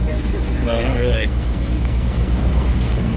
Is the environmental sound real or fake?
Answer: fake